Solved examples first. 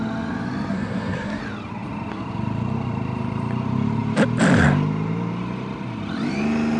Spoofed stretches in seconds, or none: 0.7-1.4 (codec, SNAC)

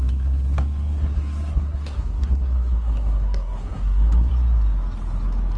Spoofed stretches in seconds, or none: 0.0-4.3 (codec, SNAC)

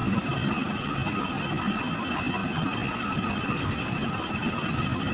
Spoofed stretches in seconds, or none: none

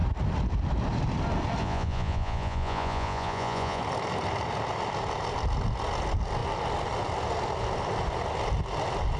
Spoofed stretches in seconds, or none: 1.6-3.8 (vocoder, Vocos)